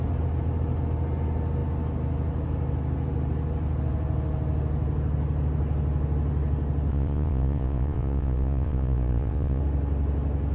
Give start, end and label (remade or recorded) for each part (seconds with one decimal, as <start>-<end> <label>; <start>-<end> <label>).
0.0-6.9 recorded; 6.9-9.6 remade; 9.6-10.5 recorded